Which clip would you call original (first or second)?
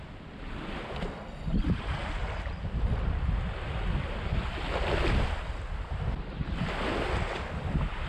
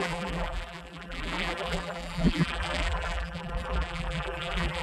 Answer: first